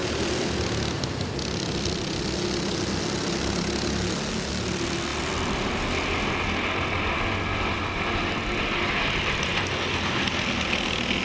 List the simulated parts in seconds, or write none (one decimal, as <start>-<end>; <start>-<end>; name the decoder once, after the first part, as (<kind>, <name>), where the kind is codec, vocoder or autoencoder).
none